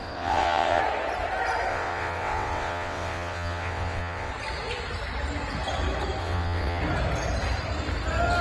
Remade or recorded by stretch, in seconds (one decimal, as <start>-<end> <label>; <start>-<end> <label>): 0.0-0.8 remade; 0.8-1.7 recorded; 1.7-4.3 remade; 4.3-6.2 recorded; 6.2-6.8 remade; 6.8-8.4 recorded